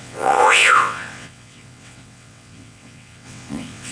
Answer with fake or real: fake